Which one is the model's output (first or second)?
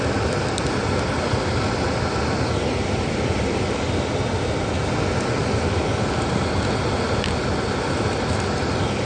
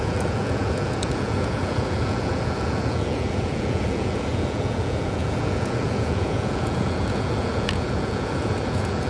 second